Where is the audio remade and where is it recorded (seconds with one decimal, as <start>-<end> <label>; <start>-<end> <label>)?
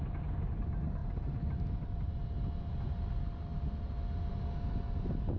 0.0-1.0 recorded; 1.0-2.1 remade; 2.1-5.4 recorded